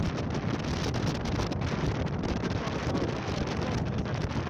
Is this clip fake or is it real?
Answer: fake